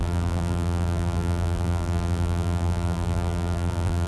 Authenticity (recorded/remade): remade